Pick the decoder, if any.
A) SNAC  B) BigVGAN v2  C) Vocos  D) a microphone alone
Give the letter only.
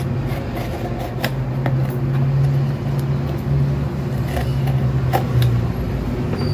D